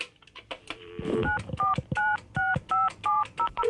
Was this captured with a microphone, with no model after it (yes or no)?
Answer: no